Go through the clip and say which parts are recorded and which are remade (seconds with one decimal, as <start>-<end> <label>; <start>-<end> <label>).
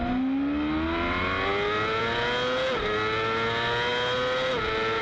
0.0-5.0 recorded